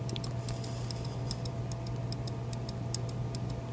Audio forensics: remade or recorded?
recorded